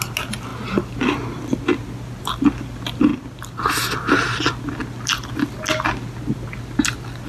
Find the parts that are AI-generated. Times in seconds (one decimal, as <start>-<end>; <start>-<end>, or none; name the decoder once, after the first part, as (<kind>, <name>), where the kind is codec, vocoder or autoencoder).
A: none